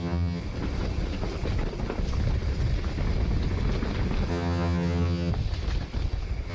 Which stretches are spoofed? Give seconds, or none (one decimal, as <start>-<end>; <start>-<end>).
0.0-0.4; 4.3-5.3